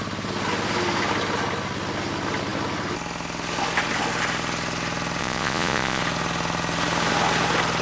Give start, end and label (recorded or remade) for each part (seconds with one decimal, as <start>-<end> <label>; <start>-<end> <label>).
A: 0.0-5.2 recorded; 5.2-6.0 remade; 6.0-7.8 recorded